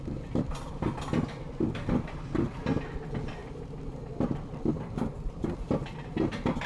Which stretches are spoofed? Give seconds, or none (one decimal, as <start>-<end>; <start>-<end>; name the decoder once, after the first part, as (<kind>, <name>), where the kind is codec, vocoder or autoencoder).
none